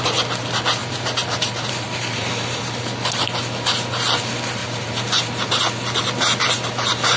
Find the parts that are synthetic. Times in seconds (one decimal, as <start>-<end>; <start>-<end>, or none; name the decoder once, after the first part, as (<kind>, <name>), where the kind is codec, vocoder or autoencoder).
0.8-2.6 (vocoder, BigVGAN v2); 4.6-5.6